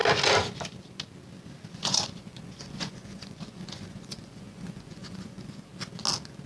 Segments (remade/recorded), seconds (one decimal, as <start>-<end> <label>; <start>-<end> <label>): 0.0-1.7 recorded; 1.7-5.7 remade; 5.7-6.5 recorded